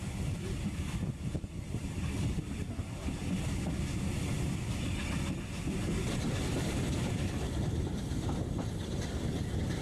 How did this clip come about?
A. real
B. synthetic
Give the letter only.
A